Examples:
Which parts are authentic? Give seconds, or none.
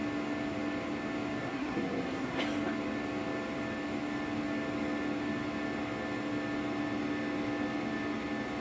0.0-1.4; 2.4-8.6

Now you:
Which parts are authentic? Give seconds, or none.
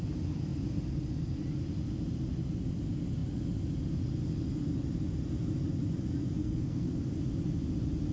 0.0-6.4; 7.0-8.1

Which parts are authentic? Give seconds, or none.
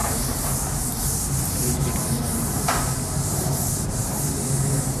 none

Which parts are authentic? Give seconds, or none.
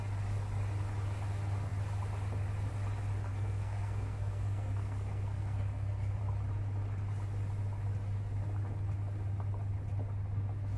0.0-3.3; 6.2-10.8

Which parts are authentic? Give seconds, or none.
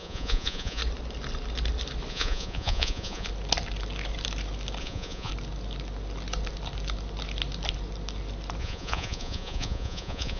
0.8-2.1; 3.3-4.8; 5.3-8.6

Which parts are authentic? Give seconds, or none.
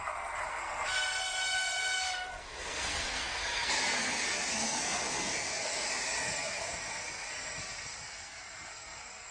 none